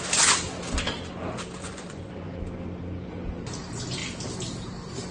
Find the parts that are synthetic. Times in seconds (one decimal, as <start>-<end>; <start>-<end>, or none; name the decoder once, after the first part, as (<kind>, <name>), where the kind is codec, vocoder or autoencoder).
1.6-2.4 (vocoder, Vocos)